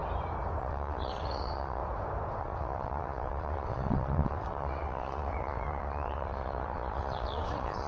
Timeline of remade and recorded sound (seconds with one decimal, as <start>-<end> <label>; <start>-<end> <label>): 0.0-0.6 recorded; 0.6-1.8 remade; 1.8-2.4 recorded; 2.4-7.9 remade